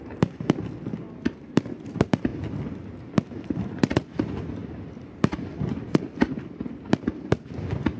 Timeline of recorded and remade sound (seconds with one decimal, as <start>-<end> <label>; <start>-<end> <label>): 0.0-8.0 recorded